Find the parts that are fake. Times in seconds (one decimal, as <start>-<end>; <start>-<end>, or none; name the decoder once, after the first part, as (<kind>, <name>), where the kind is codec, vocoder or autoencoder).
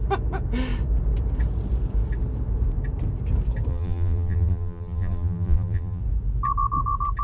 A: 3.7-6.0 (vocoder, BigVGAN v2)